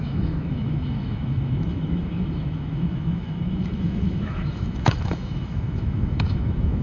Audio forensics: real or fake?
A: fake